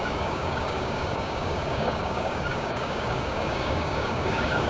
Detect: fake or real fake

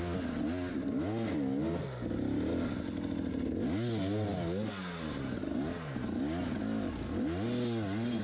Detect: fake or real real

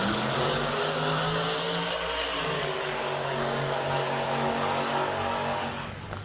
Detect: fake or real fake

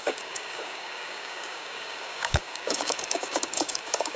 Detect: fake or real fake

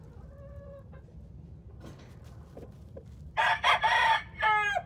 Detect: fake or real real